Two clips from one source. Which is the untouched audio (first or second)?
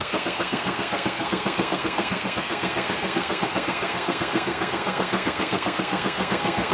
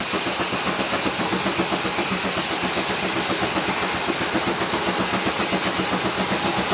second